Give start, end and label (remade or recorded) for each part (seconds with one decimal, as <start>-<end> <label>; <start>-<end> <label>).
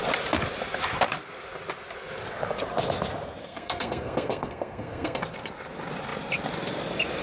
0.0-3.4 recorded; 3.4-5.2 remade; 5.2-7.2 recorded